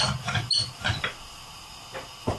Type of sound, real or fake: real